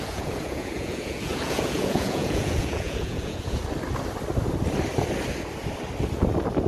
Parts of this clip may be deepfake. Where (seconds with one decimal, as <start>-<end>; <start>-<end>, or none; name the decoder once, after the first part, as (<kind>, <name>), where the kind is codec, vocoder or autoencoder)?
0.0-3.6 (vocoder, Vocos)